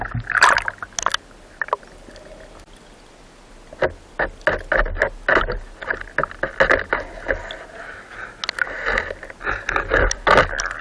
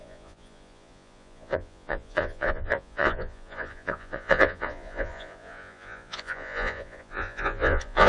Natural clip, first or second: first